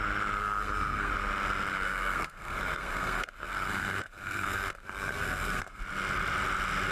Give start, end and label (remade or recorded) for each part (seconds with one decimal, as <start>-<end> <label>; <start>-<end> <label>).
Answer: 0.0-0.4 recorded; 0.4-1.1 remade; 1.1-1.7 recorded; 1.7-5.8 remade; 5.8-6.9 recorded